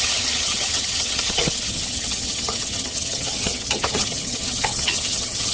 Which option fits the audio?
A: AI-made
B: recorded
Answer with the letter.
A